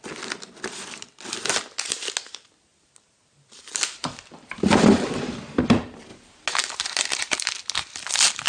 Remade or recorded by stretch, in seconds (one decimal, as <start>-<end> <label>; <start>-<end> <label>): 0.0-2.7 recorded; 2.7-5.2 remade; 5.2-8.5 recorded